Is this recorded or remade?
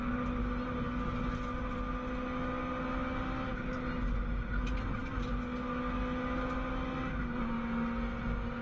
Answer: recorded